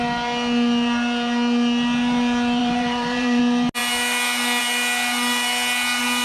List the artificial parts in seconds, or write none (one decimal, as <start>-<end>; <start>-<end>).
2.6-3.4